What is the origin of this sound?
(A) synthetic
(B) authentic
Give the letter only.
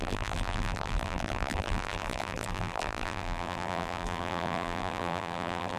A